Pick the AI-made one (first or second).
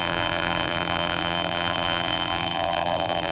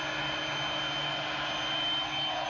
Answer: first